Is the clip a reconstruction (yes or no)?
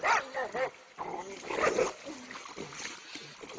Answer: no